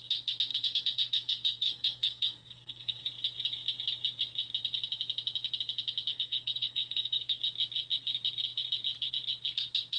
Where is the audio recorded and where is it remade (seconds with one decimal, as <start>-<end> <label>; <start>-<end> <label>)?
0.0-0.5 recorded; 0.5-3.0 remade; 3.0-6.1 recorded; 6.1-7.4 remade; 7.4-10.0 recorded